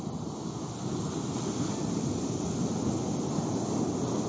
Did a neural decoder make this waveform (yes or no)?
no